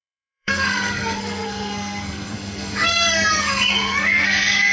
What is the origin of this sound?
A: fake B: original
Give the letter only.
A